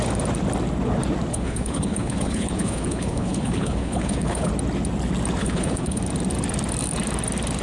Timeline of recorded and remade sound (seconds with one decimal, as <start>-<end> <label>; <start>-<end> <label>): 0.0-1.3 recorded; 1.3-4.5 remade; 4.5-5.4 recorded; 5.4-6.0 remade; 6.0-7.6 recorded